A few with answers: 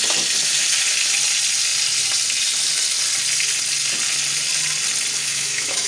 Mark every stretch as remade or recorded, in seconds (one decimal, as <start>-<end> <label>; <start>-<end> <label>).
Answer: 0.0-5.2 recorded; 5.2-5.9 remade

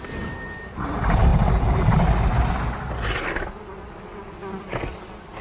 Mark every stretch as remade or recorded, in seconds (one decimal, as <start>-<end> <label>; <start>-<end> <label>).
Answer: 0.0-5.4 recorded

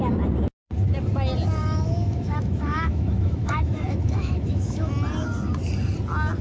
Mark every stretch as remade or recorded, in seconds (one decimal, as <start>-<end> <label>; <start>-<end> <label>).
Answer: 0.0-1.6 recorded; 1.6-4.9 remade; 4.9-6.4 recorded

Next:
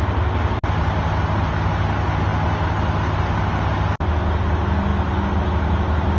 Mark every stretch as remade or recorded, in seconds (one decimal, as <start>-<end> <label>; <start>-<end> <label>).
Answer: 0.0-6.2 recorded